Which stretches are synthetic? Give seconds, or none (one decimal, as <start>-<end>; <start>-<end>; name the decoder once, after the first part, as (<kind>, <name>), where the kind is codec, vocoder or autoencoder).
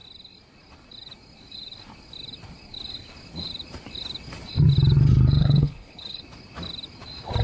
5.4-6.2 (codec, HILCodec)